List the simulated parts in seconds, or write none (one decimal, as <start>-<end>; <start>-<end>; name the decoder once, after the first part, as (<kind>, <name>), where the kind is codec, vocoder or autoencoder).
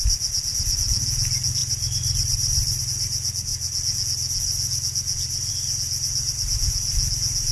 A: 1.6-2.8 (vocoder, BigVGAN v2)